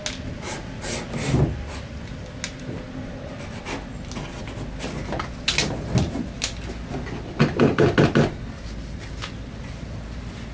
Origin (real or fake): real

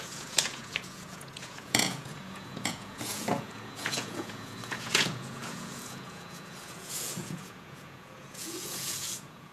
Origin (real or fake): fake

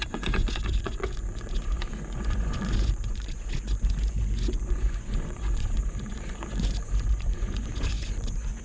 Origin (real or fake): fake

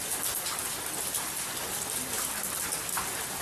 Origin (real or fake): real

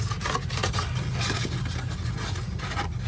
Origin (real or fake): real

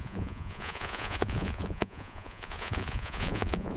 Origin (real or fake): fake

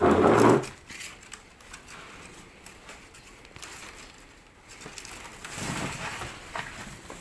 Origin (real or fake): real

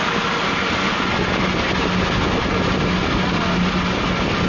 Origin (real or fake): real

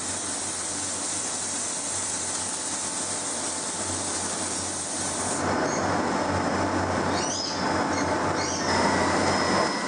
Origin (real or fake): real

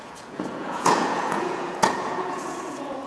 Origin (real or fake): fake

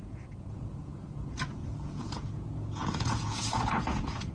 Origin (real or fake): fake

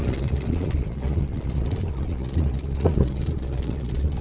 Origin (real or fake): fake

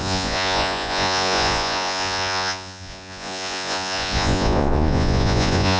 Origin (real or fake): fake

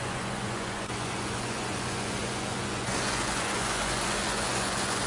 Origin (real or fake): fake